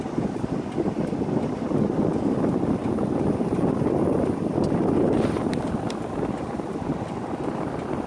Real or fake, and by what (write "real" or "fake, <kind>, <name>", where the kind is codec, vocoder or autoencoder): real